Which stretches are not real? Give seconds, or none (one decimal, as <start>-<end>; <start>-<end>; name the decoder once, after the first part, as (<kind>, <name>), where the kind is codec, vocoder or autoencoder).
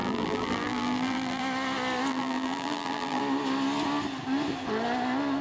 0.0-1.4 (vocoder, BigVGAN v2); 2.1-3.2